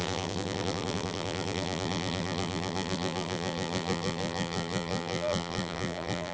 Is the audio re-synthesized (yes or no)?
yes